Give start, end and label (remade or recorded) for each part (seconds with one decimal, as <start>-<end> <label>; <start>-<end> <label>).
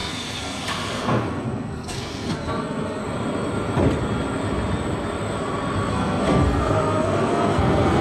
0.0-3.0 remade; 3.0-5.9 recorded; 5.9-8.0 remade